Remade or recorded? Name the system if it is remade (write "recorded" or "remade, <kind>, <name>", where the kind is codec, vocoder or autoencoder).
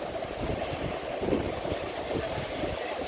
remade, vocoder, BigVGAN v2